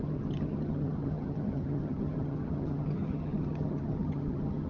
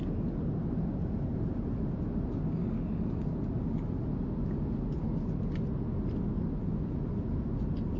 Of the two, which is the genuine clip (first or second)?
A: second